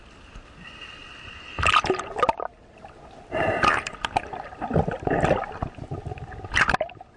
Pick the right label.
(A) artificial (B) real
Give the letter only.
B